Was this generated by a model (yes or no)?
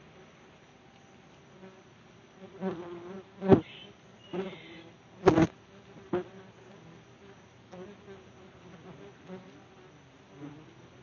no